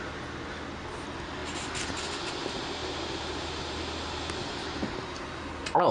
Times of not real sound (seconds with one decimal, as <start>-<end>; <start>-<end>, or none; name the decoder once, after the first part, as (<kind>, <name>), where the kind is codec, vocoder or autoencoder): 2.8-3.8 (vocoder, BigVGAN v2)